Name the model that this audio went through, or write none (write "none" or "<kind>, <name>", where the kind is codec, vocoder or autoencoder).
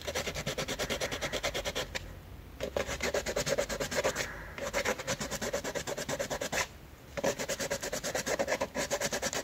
vocoder, BigVGAN v2